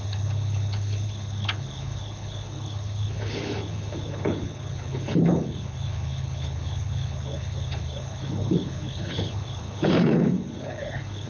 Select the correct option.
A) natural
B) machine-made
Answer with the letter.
B